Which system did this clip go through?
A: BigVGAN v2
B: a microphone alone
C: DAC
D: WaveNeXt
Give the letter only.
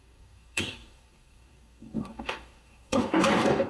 C